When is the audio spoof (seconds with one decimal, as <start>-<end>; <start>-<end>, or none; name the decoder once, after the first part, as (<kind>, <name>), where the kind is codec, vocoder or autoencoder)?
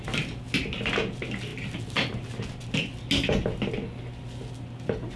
none